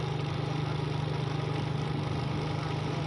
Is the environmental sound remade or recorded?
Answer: recorded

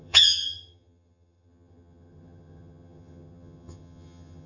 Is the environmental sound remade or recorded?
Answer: remade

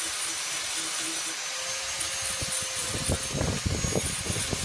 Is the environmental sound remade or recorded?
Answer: recorded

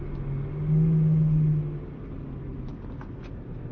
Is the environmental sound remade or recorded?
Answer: recorded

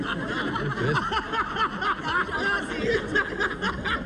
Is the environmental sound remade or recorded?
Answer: recorded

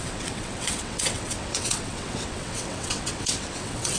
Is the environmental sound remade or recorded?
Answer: remade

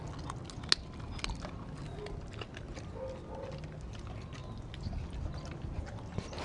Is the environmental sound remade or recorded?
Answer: recorded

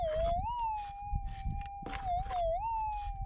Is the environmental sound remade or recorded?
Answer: recorded